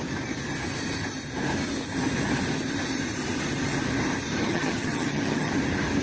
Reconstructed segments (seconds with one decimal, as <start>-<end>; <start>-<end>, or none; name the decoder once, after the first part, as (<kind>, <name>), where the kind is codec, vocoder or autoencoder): 4.4-5.5 (vocoder, HiFi-GAN)